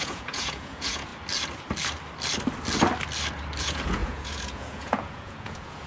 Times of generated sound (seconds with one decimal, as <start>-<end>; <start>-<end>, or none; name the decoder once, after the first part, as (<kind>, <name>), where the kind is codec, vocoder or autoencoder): 0.0-1.1 (vocoder, Vocos); 3.6-5.9